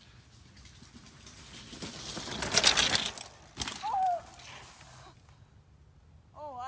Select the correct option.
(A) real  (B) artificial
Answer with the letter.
A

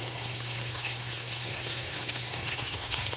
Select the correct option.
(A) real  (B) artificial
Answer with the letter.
B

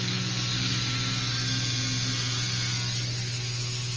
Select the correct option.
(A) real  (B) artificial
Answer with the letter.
A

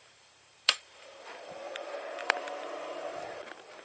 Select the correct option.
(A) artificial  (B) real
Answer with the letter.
A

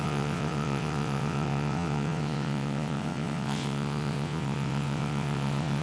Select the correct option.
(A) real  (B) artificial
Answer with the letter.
B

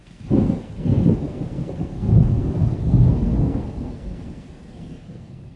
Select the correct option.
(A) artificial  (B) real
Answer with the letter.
A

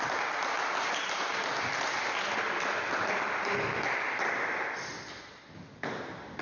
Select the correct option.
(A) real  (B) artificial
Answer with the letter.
A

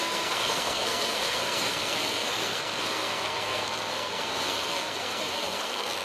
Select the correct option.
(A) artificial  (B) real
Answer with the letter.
A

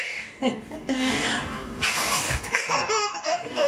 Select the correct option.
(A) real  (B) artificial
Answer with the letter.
B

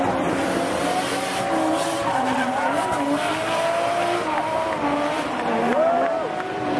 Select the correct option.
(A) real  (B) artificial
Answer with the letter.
A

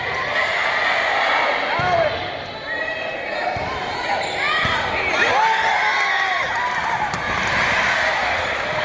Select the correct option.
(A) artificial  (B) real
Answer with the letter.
B